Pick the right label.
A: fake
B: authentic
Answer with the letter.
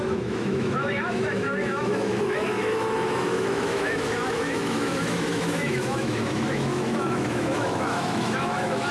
A